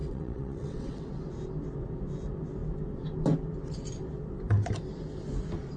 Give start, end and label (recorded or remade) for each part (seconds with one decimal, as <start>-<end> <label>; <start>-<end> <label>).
0.0-1.1 remade; 1.1-5.8 recorded